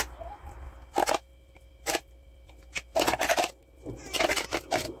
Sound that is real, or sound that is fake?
real